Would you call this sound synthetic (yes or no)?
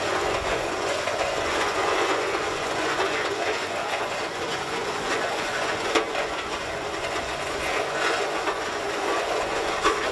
yes